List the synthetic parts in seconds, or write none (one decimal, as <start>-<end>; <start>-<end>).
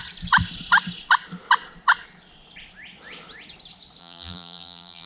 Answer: 4.0-5.1